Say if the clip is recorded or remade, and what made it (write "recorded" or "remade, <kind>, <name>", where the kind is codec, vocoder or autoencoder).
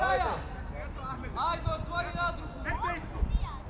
recorded